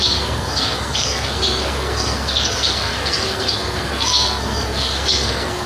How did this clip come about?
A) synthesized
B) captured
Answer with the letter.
A